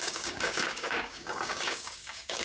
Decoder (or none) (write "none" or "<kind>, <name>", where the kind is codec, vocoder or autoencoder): codec, DAC